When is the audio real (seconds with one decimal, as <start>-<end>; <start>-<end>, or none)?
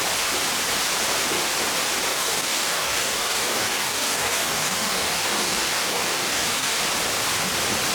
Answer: 0.0-2.1; 6.8-7.9